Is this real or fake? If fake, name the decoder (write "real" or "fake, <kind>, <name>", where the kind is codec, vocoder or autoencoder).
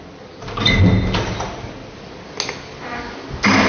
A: real